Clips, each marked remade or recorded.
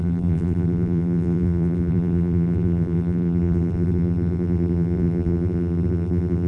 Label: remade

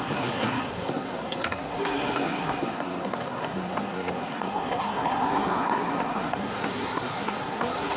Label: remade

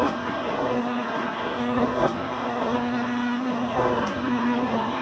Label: remade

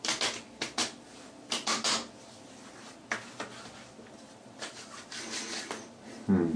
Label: recorded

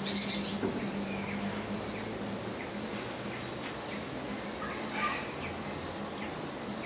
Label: recorded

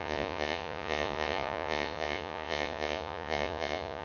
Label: remade